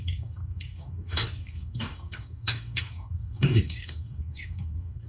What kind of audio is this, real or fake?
fake